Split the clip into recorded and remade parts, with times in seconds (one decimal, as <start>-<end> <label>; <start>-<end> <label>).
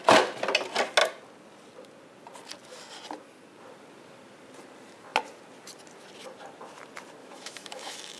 0.0-7.2 recorded; 7.2-8.2 remade